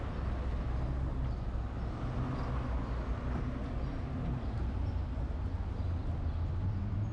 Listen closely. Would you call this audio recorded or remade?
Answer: recorded